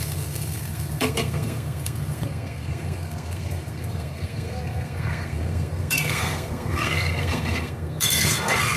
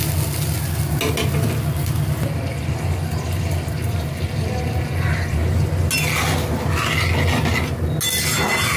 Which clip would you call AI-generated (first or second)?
first